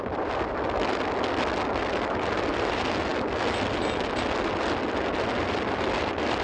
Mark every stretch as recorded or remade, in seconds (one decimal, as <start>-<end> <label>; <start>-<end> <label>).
0.0-6.4 recorded